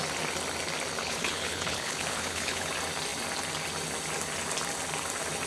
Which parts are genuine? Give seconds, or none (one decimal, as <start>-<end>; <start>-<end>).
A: 0.0-1.0; 2.7-5.5